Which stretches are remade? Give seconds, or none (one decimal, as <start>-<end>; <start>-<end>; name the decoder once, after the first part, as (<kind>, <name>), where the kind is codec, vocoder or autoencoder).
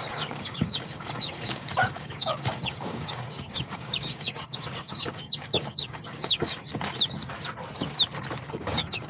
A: 0.0-6.7 (codec, DAC); 8.5-9.1